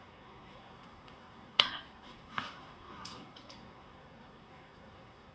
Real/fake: fake